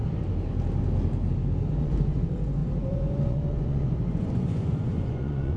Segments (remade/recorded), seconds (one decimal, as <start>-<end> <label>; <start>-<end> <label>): 0.0-1.8 recorded; 1.8-5.6 remade